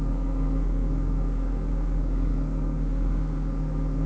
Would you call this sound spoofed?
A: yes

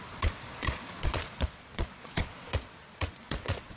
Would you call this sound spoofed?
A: yes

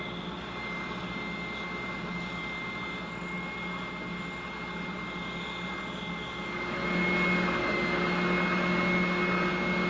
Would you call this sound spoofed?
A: no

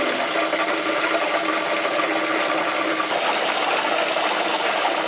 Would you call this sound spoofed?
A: no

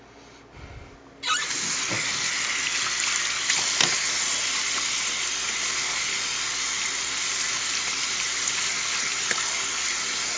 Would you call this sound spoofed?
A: no